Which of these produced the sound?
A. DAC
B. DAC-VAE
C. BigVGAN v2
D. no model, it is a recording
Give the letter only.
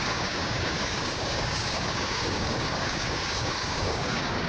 A